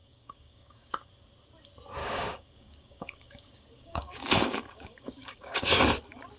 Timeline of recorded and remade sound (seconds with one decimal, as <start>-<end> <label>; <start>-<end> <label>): 0.0-1.1 remade; 1.1-2.0 recorded; 2.0-5.8 remade; 5.8-6.4 recorded